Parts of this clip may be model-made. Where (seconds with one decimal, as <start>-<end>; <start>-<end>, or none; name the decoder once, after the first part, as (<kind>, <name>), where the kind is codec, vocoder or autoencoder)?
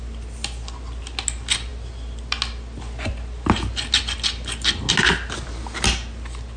none